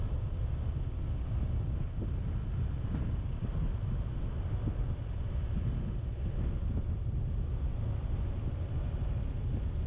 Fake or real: real